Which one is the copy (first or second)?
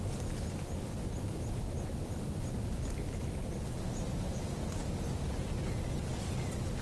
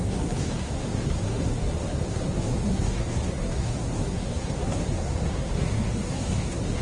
second